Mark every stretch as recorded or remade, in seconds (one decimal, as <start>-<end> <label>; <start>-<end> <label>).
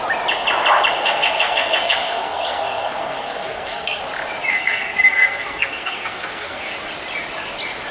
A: 0.0-1.0 recorded; 1.0-4.0 remade; 4.0-4.5 recorded; 4.5-6.7 remade; 6.7-7.9 recorded